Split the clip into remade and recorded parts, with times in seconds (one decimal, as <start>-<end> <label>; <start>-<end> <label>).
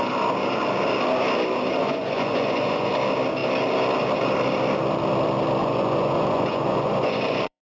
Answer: 0.0-1.8 recorded; 1.8-2.9 remade; 2.9-5.6 recorded; 5.6-7.6 remade